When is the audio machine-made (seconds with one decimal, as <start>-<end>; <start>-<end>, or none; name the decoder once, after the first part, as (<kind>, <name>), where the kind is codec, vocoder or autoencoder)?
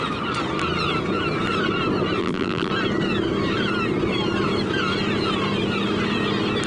2.2-2.7 (vocoder, BigVGAN v2)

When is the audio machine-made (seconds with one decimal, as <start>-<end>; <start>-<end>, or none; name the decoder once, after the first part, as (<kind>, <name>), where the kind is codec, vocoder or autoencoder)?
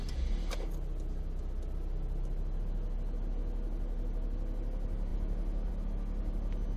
none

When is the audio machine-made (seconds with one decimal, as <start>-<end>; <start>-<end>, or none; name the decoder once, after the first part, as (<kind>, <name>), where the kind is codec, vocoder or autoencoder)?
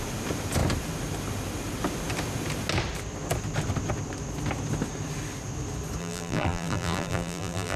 6.0-7.8 (vocoder, BigVGAN v2)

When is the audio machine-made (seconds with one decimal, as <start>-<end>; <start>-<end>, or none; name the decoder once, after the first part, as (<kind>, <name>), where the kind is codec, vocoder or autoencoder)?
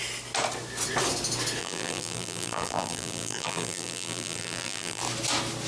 1.6-5.0 (vocoder, BigVGAN v2)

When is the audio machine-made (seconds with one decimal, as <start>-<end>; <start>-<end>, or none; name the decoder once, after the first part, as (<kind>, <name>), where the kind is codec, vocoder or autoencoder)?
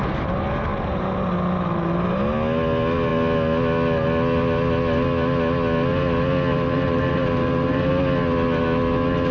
0.7-1.3 (vocoder, BigVGAN v2); 6.5-7.9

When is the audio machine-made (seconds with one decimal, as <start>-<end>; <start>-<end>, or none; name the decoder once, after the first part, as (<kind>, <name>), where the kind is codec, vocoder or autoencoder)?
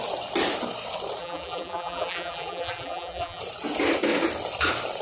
1.2-3.4 (vocoder, BigVGAN v2)